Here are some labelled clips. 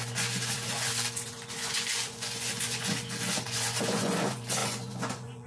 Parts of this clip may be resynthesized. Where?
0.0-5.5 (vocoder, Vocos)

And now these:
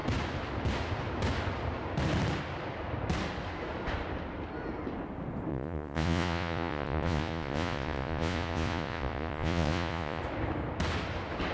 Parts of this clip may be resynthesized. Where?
5.5-10.2 (vocoder, Vocos)

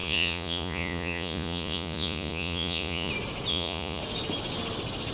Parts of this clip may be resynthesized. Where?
0.0-3.1 (vocoder, Vocos); 3.5-4.0

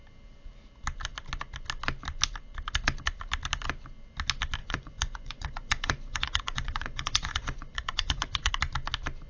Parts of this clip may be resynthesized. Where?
4.6-8.5 (vocoder, Vocos)

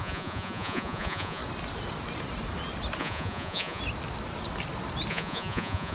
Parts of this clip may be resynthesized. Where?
0.0-1.4 (vocoder, Vocos); 3.0-3.8; 5.1-5.9

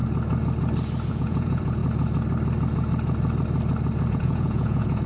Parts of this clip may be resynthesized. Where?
1.1-1.8 (vocoder, Vocos); 4.1-5.1

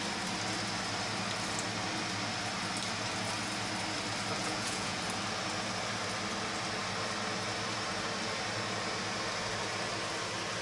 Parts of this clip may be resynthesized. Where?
4.4-5.0 (vocoder, Vocos)